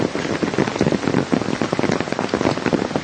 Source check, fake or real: real